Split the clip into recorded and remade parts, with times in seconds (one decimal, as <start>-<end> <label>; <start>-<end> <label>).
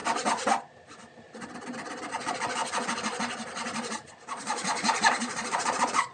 0.0-2.1 recorded; 2.1-2.6 remade; 2.6-4.3 recorded; 4.3-6.1 remade